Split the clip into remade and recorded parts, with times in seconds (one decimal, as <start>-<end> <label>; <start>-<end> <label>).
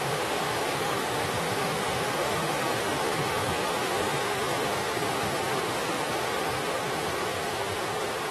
0.0-8.3 remade